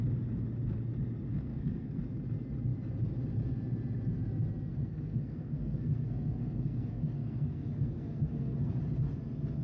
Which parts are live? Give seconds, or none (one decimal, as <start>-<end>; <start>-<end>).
0.0-1.3; 2.0-4.7; 8.7-9.6